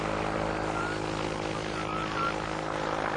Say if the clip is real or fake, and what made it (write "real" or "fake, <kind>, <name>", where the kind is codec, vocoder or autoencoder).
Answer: real